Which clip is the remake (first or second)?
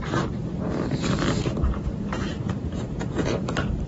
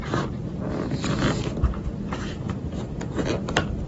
first